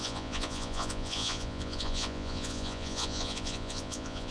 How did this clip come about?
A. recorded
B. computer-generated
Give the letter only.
B